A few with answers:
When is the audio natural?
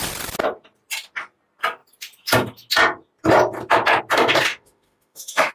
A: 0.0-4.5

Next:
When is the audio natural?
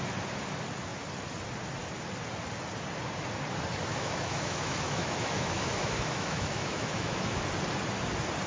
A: 0.0-3.9; 7.4-8.5